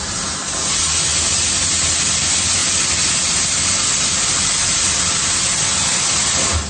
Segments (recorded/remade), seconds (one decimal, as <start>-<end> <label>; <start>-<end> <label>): 0.0-6.7 recorded

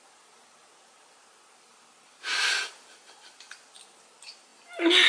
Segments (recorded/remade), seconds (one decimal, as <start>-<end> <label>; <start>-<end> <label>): 0.0-5.1 recorded